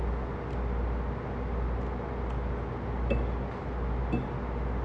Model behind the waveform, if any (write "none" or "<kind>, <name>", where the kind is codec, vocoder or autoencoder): none